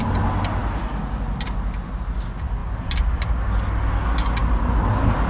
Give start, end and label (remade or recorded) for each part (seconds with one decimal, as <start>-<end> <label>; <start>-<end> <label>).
0.0-5.3 recorded